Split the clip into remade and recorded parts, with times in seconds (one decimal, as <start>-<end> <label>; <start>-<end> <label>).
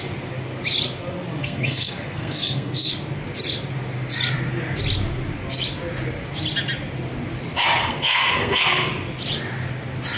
0.0-1.4 recorded; 1.4-2.9 remade; 2.9-7.8 recorded; 7.8-8.9 remade; 8.9-10.2 recorded